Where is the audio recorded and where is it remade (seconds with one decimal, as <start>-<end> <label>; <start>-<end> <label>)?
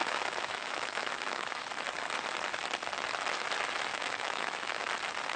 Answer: 0.0-1.6 remade; 1.6-3.9 recorded; 3.9-4.9 remade; 4.9-5.4 recorded